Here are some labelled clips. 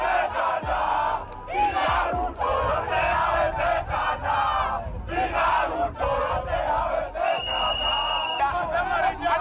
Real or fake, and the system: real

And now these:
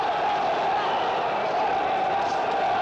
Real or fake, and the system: real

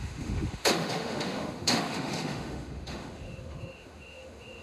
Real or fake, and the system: fake, autoencoder, DAC-VAE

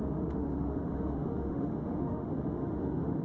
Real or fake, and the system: fake, autoencoder, DAC-VAE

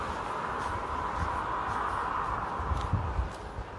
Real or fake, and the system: real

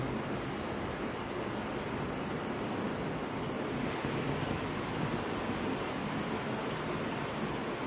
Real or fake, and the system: real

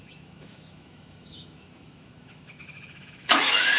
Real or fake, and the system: fake, autoencoder, DAC-VAE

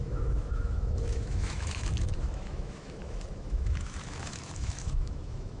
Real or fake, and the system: fake, autoencoder, DAC-VAE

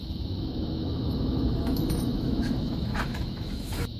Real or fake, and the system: fake, autoencoder, DAC-VAE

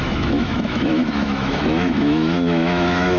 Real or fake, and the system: fake, autoencoder, DAC-VAE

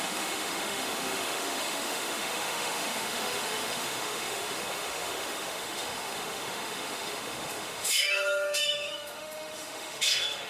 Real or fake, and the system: fake, autoencoder, DAC-VAE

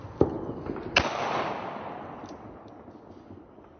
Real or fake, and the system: real